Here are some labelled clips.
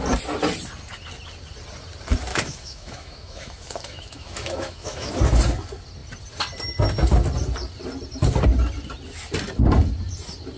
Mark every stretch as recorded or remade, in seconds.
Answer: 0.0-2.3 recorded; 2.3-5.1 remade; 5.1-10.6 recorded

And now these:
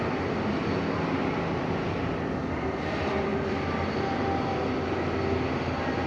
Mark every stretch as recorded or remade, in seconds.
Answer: 0.0-6.1 recorded